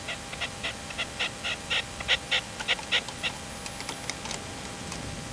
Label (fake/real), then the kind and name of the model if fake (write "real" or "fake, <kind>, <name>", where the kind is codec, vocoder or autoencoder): real